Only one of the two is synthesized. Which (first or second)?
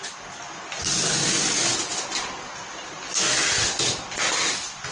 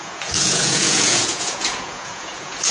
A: second